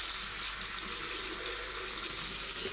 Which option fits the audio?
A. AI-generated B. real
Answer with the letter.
B